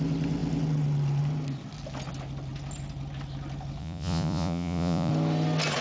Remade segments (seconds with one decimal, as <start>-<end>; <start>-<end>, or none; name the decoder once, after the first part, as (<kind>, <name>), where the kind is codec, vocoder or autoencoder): 3.8-5.1 (vocoder, Vocos)